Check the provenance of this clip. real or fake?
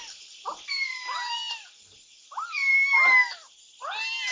real